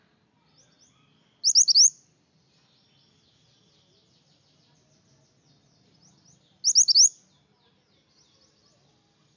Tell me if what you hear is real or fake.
real